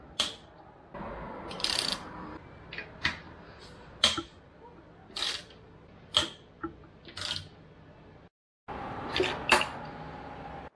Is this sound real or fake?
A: real